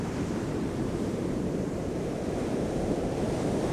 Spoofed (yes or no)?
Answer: yes